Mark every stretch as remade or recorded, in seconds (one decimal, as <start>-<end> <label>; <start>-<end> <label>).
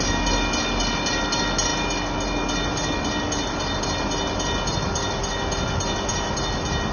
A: 0.0-6.9 recorded